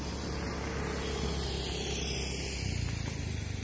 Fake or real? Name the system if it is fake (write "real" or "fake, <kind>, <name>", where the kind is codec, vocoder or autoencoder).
real